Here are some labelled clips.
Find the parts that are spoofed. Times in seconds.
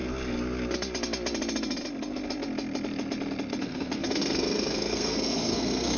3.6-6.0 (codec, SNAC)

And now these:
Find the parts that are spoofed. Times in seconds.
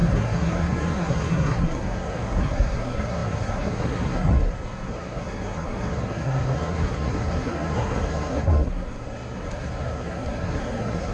0.0-11.1 (codec, SNAC)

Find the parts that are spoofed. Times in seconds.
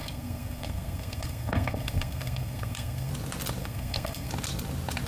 0.0-3.1 (codec, SNAC); 3.6-4.3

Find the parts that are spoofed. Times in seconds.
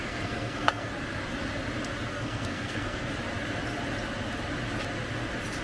0.0-0.9 (codec, SNAC); 2.1-3.1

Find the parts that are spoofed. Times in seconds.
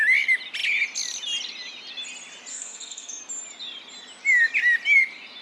2.5-3.2 (codec, SNAC)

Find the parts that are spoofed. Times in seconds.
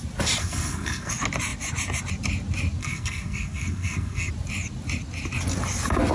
0.4-1.1 (codec, SNAC); 2.8-4.3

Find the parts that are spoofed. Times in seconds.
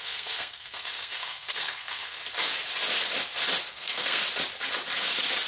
0.0-2.2 (codec, SNAC); 3.7-4.2